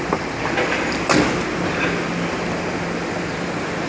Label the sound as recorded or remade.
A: recorded